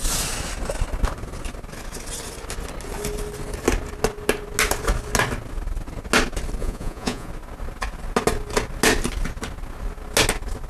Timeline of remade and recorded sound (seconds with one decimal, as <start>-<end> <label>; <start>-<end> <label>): 0.0-6.6 recorded; 6.6-7.3 remade; 7.3-10.7 recorded